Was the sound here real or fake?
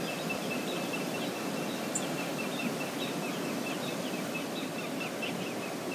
real